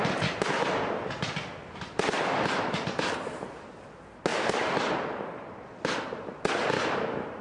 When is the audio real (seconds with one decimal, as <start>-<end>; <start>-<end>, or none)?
0.0-7.4